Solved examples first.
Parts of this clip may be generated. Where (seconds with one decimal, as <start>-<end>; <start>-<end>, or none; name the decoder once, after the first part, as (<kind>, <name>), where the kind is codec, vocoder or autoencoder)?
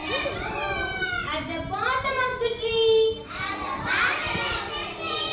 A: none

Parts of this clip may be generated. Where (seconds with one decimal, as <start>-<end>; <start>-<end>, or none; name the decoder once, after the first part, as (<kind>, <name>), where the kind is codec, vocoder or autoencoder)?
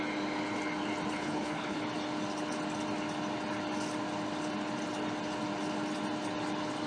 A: 1.2-1.8 (codec, HILCodec)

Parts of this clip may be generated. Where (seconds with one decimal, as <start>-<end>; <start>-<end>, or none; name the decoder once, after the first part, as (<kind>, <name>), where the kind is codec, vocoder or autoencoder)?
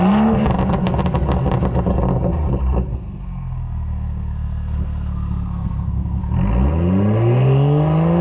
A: 2.9-6.2 (codec, SNAC)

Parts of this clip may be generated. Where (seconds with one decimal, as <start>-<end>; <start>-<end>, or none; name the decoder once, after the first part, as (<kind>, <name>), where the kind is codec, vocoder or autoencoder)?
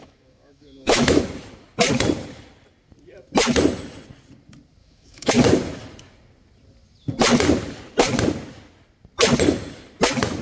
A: 0.0-1.2 (autoencoder, DAC-VAE); 4.8-5.3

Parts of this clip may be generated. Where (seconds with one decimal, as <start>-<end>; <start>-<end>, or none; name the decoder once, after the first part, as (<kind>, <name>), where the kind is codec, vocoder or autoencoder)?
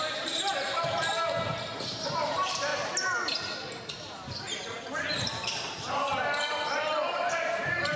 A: 0.0-2.7 (vocoder, BigVGAN v2); 3.9-6.1; 7.3-8.0